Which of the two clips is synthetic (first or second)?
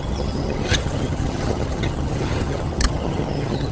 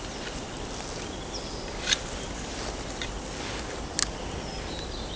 first